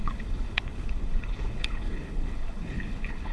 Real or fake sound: fake